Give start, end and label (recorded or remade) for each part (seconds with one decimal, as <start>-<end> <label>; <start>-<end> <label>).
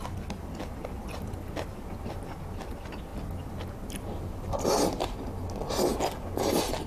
0.0-6.9 recorded